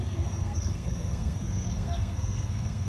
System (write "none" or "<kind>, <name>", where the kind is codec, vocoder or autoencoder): codec, SNAC